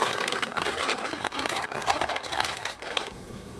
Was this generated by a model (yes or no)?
yes